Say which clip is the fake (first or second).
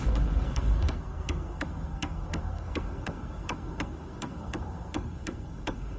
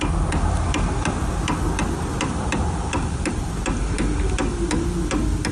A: first